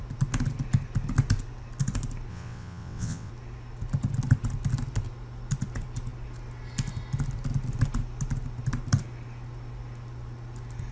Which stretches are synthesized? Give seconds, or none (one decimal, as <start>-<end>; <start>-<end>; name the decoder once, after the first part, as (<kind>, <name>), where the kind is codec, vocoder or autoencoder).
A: 2.3-3.3 (vocoder, WaveNeXt)

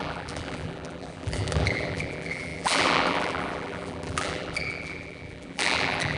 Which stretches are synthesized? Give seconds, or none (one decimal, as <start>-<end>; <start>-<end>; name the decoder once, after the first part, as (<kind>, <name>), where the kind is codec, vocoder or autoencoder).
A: 0.0-6.2 (vocoder, BigVGAN v2)

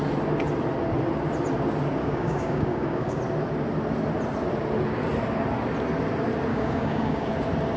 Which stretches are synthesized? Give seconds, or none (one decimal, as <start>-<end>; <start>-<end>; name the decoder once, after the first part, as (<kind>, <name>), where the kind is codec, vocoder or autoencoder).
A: 2.0-3.2 (codec, DAC); 6.5-7.3

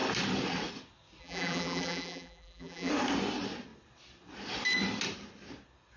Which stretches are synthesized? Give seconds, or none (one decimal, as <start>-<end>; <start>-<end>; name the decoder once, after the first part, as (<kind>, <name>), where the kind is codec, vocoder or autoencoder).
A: 1.2-2.9 (vocoder, BigVGAN v2)

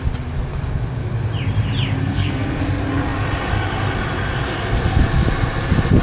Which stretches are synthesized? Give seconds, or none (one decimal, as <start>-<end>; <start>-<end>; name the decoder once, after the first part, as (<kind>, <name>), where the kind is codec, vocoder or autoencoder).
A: 2.0-2.6 (codec, SNAC)

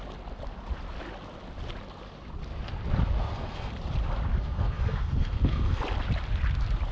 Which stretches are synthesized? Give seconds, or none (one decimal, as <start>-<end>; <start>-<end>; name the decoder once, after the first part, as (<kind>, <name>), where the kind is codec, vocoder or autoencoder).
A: 3.2-3.7 (codec, SNAC); 4.4-5.8

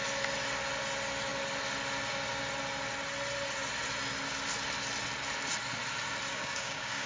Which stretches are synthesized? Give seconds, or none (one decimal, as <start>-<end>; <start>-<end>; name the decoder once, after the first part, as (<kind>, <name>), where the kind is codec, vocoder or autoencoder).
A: 6.3-7.1 (codec, DAC)

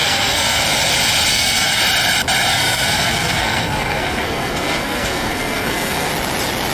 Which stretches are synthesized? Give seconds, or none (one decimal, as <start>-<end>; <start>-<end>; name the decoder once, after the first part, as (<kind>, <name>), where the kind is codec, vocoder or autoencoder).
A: 0.0-0.6 (codec, SNAC); 1.3-1.8; 2.5-6.1